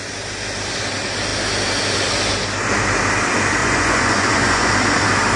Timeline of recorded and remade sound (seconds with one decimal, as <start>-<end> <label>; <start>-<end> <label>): 0.0-3.6 recorded; 3.6-4.7 remade; 4.7-5.4 recorded